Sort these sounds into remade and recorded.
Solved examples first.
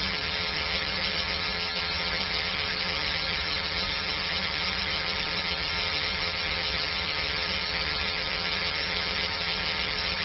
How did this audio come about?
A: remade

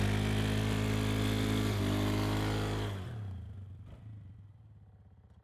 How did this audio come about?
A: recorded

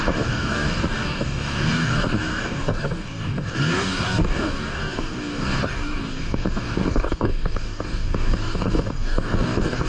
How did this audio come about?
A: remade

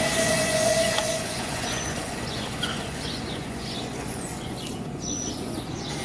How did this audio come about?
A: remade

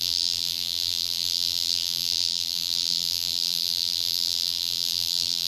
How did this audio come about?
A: remade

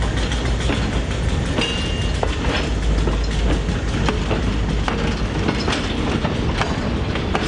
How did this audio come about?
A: recorded